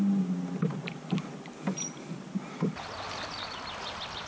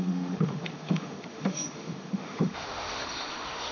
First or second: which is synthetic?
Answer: second